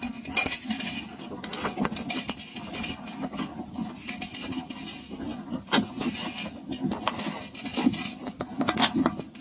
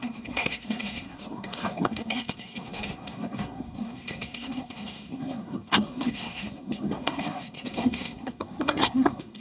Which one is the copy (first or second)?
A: second